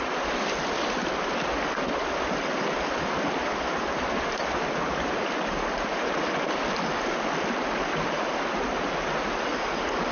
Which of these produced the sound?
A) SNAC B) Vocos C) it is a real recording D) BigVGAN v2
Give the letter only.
D